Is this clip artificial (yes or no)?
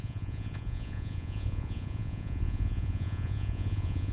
yes